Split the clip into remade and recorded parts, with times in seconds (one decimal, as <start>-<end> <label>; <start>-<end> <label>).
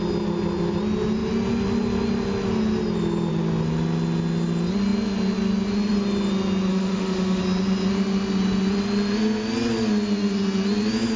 0.0-6.7 recorded; 6.7-7.4 remade; 7.4-11.2 recorded